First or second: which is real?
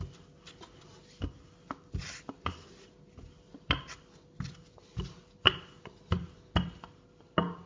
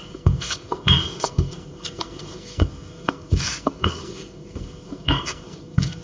first